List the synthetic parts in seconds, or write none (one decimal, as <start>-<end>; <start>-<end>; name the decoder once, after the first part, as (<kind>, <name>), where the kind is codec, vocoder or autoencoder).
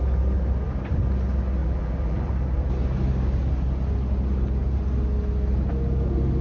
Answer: 1.6-2.3 (vocoder, BigVGAN v2)